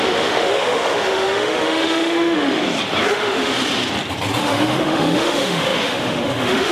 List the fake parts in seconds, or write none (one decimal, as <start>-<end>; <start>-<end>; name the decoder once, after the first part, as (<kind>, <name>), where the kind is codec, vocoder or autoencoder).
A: 0.0-2.6 (autoencoder, DAC-VAE); 3.1-3.5; 4.4-6.7